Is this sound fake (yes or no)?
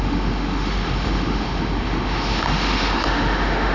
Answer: yes